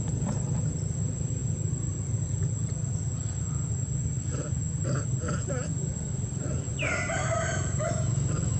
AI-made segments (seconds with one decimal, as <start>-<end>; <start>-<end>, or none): none